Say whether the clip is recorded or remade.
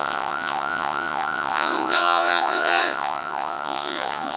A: remade